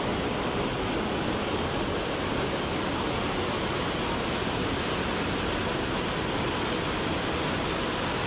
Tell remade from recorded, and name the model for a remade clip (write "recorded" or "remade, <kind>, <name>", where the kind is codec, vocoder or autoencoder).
recorded